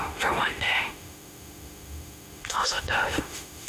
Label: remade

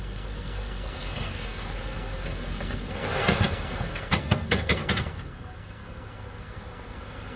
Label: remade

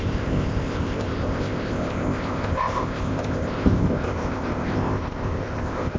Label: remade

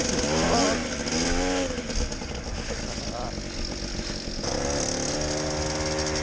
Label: recorded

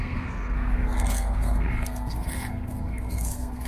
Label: remade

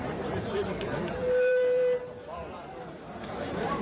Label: remade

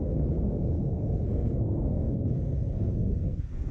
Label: remade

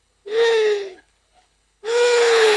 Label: remade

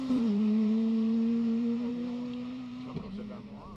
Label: remade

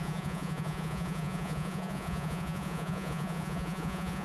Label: remade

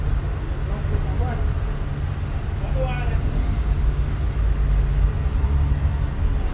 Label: recorded